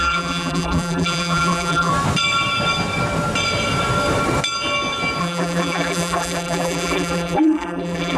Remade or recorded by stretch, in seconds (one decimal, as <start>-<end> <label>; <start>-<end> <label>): 0.0-1.9 remade; 1.9-5.2 recorded; 5.2-8.2 remade